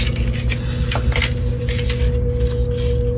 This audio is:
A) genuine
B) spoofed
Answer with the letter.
A